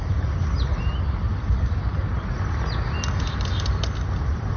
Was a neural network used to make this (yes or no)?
no